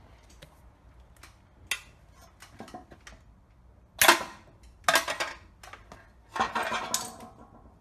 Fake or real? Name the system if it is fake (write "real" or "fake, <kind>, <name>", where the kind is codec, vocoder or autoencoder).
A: real